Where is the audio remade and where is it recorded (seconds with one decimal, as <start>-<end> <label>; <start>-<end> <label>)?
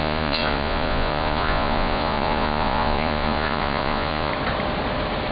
0.0-4.3 remade; 4.3-5.3 recorded